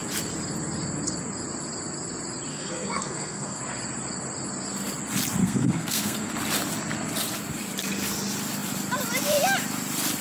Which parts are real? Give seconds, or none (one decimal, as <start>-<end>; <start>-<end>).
0.0-2.5; 3.6-5.4; 6.3-10.2